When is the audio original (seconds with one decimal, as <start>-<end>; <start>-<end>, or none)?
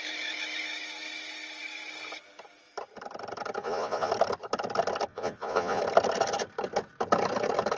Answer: 0.0-3.6; 4.1-5.1; 5.8-7.8